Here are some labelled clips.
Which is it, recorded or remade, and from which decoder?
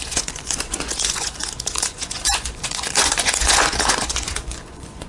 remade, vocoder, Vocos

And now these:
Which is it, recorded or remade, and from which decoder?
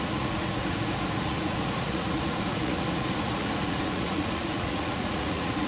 remade, vocoder, Vocos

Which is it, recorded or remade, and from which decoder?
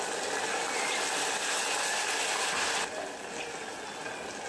recorded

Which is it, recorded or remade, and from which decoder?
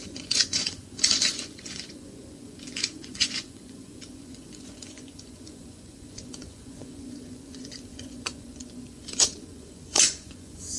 remade, vocoder, Vocos